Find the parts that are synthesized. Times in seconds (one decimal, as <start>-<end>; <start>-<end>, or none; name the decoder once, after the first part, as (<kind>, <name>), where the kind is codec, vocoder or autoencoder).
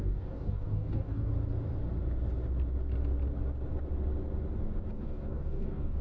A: 0.0-1.3 (codec, DAC); 4.9-6.0